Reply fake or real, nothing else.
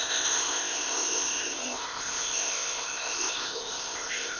fake